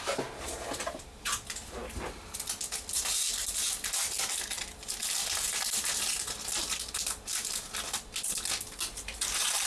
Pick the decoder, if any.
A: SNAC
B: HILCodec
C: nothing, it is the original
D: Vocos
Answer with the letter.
C